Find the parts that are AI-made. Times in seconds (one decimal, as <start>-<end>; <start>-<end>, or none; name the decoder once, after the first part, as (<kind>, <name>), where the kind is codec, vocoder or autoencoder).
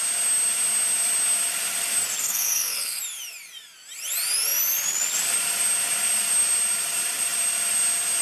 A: 2.2-3.0 (codec, SNAC)